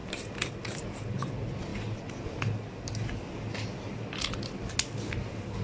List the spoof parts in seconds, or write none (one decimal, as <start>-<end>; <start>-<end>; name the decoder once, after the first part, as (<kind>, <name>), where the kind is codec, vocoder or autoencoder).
none

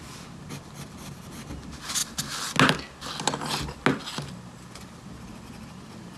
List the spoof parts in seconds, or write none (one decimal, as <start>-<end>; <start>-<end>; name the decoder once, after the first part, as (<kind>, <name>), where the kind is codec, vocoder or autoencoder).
none

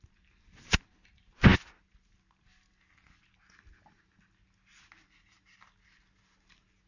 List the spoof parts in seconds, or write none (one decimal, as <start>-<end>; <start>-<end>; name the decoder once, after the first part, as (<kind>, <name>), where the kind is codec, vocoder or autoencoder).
none